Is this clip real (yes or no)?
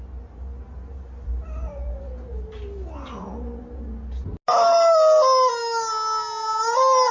yes